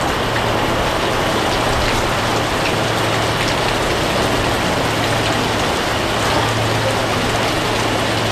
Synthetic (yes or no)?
no